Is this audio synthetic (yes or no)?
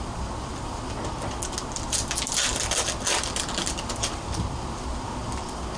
no